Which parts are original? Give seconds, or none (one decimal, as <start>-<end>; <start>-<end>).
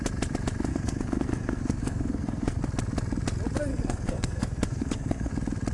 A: 0.0-0.7; 2.6-3.7; 5.3-5.7